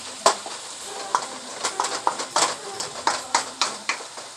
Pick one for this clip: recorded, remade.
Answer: remade